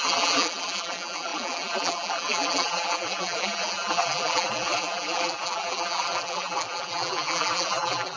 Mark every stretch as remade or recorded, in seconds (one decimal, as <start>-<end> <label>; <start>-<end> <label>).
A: 0.0-8.2 remade